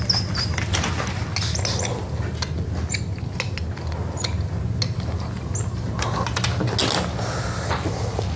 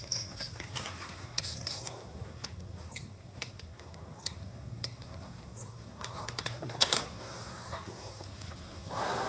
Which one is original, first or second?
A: first